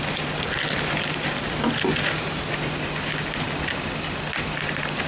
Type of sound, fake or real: real